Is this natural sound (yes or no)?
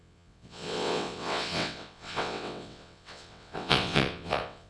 no